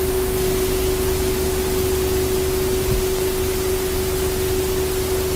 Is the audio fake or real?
real